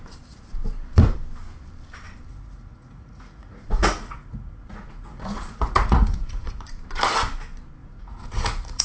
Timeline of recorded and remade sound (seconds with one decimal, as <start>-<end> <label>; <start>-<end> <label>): 0.0-2.3 recorded; 2.3-6.7 remade; 6.7-7.8 recorded; 7.8-8.8 remade